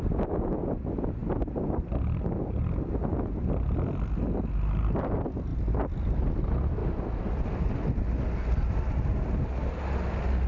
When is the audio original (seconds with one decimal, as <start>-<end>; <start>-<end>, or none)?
0.0-1.2; 2.9-5.5; 6.2-6.8; 7.6-10.5